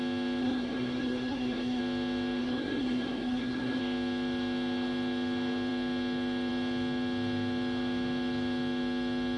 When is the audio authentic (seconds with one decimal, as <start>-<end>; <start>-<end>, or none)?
0.0-0.4; 1.8-2.4; 3.8-9.4